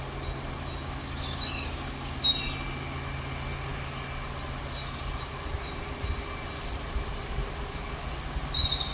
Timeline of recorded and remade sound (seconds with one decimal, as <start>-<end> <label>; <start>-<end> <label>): 0.0-1.0 recorded; 1.0-2.2 remade; 2.2-8.9 recorded